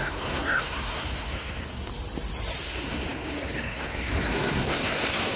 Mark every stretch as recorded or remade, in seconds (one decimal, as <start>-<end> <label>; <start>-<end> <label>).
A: 0.0-1.9 remade; 1.9-2.6 recorded; 2.6-5.4 remade